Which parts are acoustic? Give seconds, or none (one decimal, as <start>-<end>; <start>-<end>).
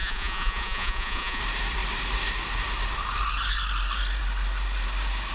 1.4-5.3